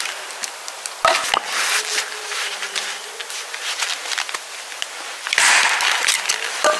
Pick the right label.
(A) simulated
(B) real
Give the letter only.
B